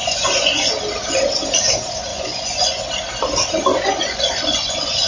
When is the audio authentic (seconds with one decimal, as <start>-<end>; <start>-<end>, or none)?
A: 0.7-2.1; 2.8-3.7